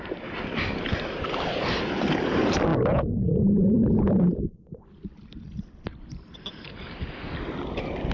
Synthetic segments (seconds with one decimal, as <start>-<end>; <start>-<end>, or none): 0.0-8.1